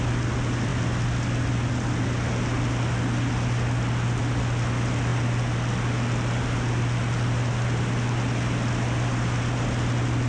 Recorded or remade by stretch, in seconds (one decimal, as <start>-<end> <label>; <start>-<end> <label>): 0.0-10.3 recorded

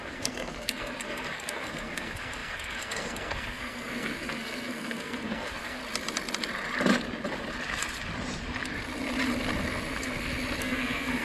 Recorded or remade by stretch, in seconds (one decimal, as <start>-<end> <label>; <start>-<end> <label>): 0.0-5.8 remade; 5.8-10.6 recorded; 10.6-11.2 remade

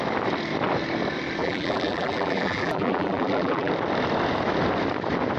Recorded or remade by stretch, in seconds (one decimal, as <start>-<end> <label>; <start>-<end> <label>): 0.0-1.4 recorded; 1.4-3.7 remade; 3.7-5.4 recorded

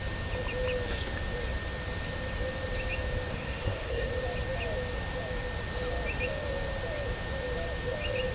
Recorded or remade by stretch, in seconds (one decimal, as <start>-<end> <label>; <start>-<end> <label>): 0.0-3.3 recorded; 3.3-4.1 remade; 4.1-8.3 recorded

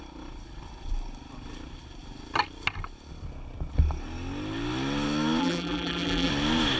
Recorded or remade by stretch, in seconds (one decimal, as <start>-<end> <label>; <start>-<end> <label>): 0.0-5.4 recorded; 5.4-6.3 remade; 6.3-6.8 recorded

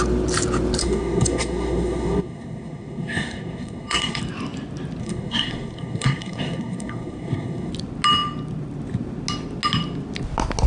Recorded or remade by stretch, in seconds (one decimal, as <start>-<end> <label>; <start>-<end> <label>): 0.0-0.8 recorded; 0.8-4.2 remade; 4.2-5.0 recorded; 5.0-7.7 remade; 7.7-10.7 recorded